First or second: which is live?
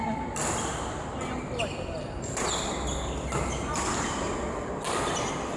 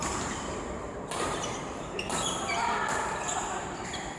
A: first